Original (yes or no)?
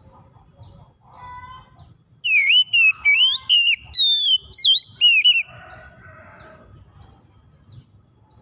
yes